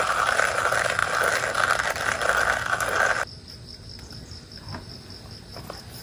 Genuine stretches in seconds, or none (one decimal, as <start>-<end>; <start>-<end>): 0.0-6.0